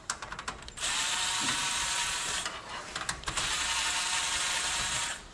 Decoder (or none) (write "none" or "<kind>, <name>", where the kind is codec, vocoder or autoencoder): vocoder, BigVGAN v2